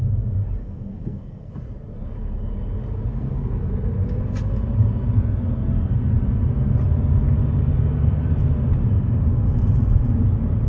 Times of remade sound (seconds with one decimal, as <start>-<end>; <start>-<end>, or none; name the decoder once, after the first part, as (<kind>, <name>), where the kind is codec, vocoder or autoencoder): 0.6-1.5 (codec, SNAC); 3.1-3.7